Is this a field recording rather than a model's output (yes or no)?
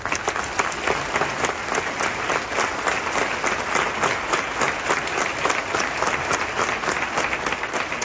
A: yes